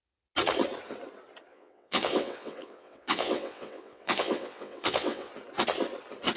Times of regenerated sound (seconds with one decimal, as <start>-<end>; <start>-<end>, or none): 1.5-5.3